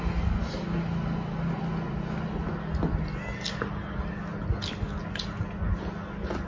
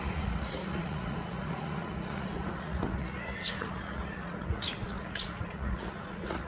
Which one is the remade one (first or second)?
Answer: second